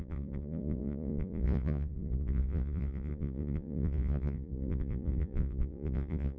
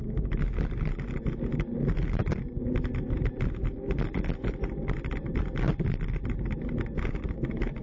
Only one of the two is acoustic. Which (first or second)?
second